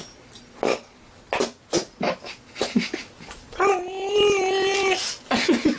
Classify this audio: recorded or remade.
recorded